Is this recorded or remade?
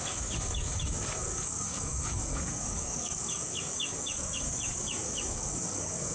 remade